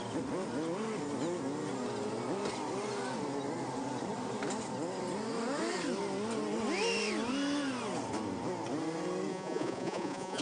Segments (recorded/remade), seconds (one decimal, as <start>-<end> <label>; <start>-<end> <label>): 0.0-9.3 recorded; 9.3-10.4 remade